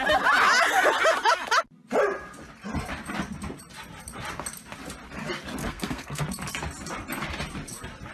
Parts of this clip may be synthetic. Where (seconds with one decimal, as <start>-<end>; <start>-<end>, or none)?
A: 5.6-6.2